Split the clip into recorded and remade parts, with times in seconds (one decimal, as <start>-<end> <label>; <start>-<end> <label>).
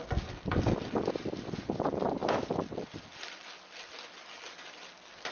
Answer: 0.0-5.3 recorded